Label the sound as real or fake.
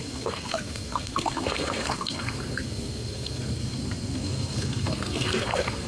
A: fake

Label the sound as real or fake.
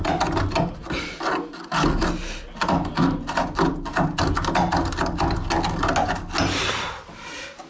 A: real